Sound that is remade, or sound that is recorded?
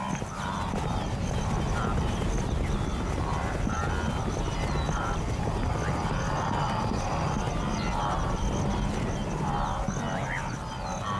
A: recorded